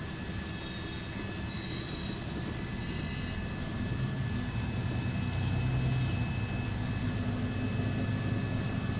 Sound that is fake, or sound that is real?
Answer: real